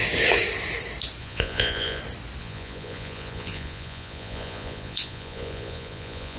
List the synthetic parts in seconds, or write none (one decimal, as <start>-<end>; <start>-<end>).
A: 1.2-2.0; 2.4-6.4